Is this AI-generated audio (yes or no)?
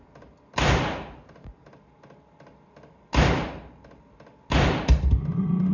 no